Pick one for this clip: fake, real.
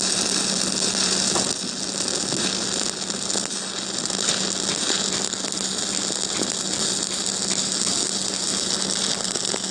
real